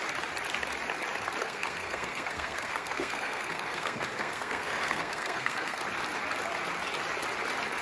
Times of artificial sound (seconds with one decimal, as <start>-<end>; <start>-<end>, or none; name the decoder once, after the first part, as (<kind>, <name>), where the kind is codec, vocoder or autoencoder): 1.4-5.8 (codec, SNAC)